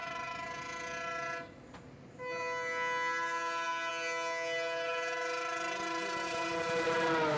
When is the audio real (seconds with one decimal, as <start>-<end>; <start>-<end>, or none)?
0.0-7.4